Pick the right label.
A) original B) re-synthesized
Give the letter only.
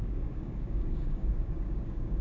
B